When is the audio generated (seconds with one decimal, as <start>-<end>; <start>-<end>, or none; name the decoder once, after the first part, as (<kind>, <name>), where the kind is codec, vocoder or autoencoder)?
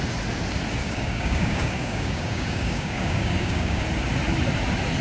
0.8-3.8 (codec, DAC)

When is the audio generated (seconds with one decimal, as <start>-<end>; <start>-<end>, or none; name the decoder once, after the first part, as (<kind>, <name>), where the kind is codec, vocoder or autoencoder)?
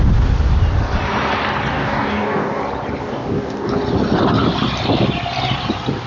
1.7-2.6 (codec, DAC); 3.0-3.7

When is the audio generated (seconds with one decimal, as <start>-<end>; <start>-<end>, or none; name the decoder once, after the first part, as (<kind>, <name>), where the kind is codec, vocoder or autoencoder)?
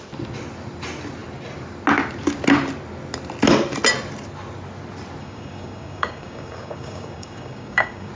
5.2-8.1 (codec, DAC)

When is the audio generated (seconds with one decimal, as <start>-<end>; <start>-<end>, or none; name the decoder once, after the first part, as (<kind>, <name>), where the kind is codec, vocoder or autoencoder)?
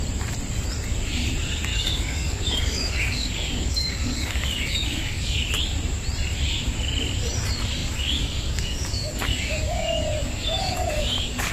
1.7-5.5 (codec, DAC); 7.8-11.5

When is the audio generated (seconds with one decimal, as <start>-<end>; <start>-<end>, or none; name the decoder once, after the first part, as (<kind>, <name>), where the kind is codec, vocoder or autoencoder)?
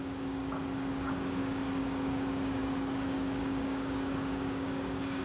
0.0-0.4 (codec, DAC); 0.9-5.2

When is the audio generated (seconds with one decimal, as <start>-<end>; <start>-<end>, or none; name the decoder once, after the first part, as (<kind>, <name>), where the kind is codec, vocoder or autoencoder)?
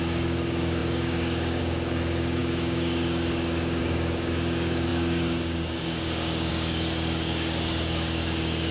0.0-8.7 (codec, DAC)